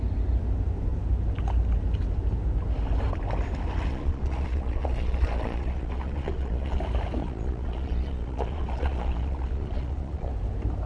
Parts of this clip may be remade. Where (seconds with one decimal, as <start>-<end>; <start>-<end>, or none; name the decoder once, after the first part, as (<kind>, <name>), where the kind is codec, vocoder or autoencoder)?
3.9-6.8 (vocoder, Vocos); 7.2-10.3